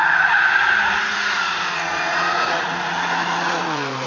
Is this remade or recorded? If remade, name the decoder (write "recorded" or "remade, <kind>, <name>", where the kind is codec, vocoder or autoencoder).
remade, vocoder, Vocos